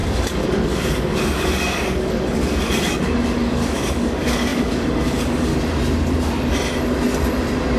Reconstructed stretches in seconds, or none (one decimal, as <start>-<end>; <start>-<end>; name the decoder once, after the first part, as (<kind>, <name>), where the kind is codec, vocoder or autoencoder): 0.0-5.5 (codec, DAC)